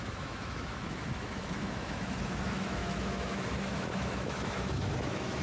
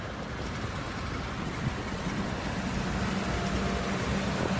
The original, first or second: second